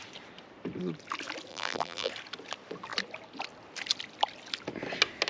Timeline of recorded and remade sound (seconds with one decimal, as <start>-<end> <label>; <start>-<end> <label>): 0.0-1.5 recorded; 1.5-2.1 remade; 2.1-5.3 recorded